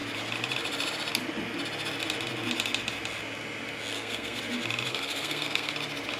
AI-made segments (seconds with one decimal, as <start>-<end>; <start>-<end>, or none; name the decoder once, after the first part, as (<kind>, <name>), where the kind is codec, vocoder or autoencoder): 3.9-4.4 (codec, SNAC); 4.9-5.7